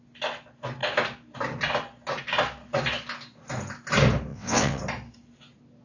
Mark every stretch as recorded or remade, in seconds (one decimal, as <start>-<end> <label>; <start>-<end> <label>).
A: 0.0-4.3 recorded; 4.3-4.8 remade; 4.8-5.8 recorded

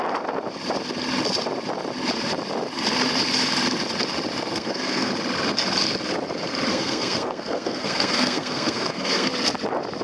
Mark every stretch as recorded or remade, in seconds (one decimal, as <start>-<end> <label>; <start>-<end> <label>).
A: 0.0-4.5 recorded; 4.5-5.1 remade; 5.1-6.7 recorded; 6.7-9.3 remade; 9.3-10.0 recorded

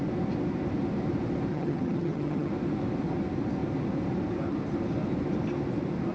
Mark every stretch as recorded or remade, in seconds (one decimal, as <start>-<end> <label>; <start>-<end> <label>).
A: 0.0-1.5 recorded; 1.5-2.5 remade; 2.5-6.1 recorded

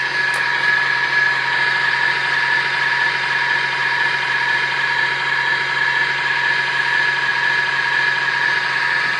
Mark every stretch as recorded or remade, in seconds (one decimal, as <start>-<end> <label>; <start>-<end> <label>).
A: 0.0-3.8 recorded; 3.8-5.0 remade; 5.0-9.2 recorded

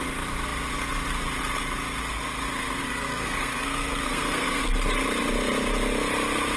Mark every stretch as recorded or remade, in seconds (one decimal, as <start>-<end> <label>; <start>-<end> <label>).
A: 0.0-2.8 recorded; 2.8-4.6 remade; 4.6-6.6 recorded